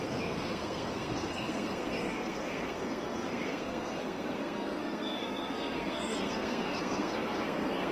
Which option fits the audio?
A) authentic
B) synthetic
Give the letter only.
B